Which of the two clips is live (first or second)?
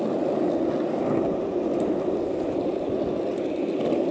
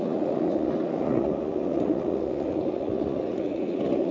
first